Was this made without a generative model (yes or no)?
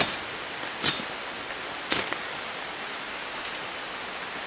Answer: yes